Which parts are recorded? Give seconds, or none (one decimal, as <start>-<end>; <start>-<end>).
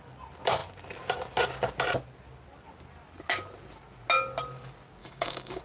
0.0-5.0